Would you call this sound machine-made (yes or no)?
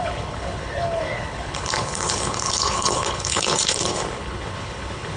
yes